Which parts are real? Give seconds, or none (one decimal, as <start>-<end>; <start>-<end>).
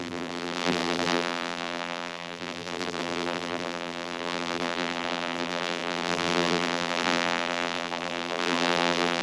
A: none